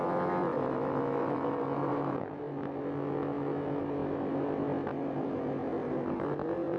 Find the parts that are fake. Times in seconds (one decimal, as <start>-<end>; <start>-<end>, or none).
1.2-2.4